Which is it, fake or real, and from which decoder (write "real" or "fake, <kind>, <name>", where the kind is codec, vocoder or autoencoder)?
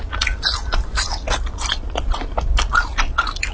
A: real